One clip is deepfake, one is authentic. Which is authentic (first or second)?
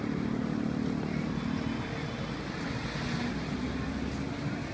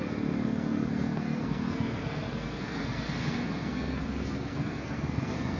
first